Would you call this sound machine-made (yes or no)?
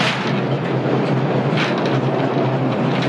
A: no